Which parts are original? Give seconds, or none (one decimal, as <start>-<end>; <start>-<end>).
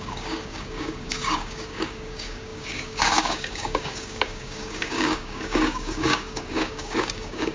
none